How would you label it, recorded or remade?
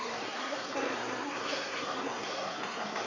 remade